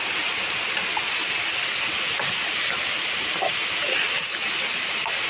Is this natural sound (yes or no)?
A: yes